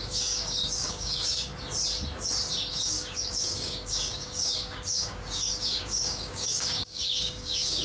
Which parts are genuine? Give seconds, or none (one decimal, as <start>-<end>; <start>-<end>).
1.5-2.7